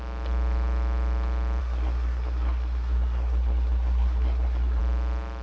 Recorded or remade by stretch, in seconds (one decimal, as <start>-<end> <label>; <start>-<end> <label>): 0.0-1.6 recorded; 1.6-4.8 remade; 4.8-5.4 recorded